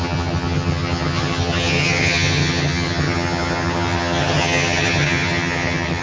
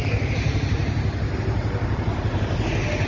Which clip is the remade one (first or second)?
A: first